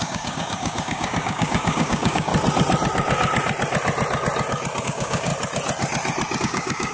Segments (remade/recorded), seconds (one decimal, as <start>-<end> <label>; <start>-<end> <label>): 0.0-2.3 remade; 2.3-4.8 recorded; 4.8-5.3 remade; 5.3-6.4 recorded; 6.4-6.9 remade